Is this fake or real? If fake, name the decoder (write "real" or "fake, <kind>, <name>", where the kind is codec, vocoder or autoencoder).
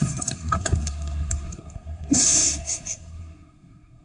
fake, codec, SNAC